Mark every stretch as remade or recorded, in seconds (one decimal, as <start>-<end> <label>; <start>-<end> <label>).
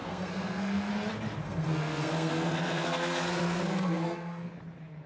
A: 0.0-0.9 remade; 0.9-1.4 recorded; 1.4-4.5 remade; 4.5-5.1 recorded